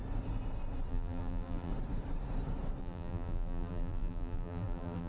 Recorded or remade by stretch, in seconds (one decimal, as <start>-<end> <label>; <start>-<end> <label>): 0.0-0.9 recorded; 0.9-1.7 remade; 1.7-2.8 recorded; 2.8-5.1 remade